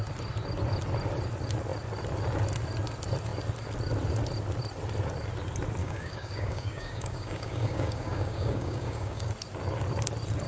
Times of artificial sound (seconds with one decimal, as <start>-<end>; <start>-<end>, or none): 5.8-9.3